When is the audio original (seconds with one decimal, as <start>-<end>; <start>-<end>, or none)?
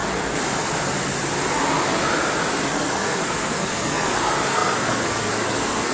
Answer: 0.0-2.6